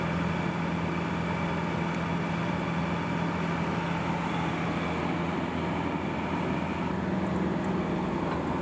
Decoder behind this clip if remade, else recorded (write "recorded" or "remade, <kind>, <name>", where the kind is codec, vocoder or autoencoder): recorded